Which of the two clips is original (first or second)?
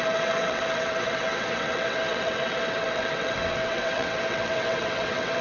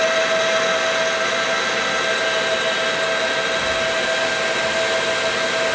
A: second